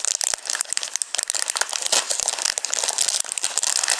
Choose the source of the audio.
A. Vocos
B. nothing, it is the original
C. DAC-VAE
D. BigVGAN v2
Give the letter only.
B